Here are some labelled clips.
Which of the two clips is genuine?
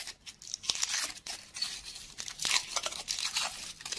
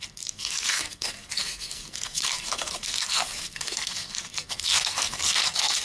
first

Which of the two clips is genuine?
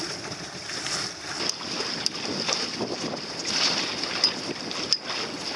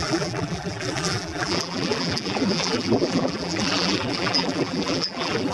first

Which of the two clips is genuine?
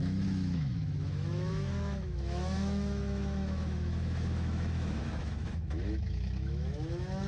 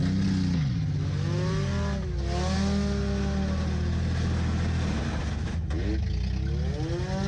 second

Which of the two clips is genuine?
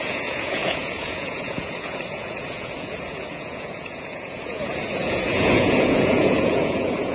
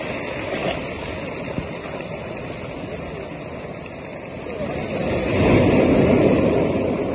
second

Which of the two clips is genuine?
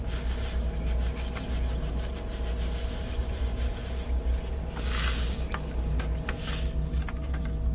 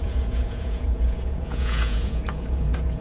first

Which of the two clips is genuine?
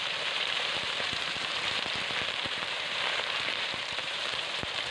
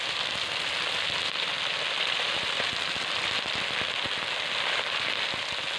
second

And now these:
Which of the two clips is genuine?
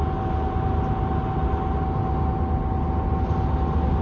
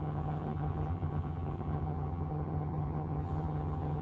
first